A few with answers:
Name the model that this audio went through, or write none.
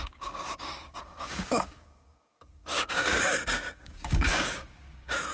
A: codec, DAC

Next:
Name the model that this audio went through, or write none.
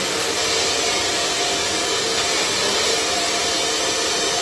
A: none